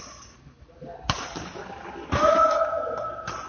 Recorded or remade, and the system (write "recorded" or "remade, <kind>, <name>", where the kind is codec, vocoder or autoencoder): recorded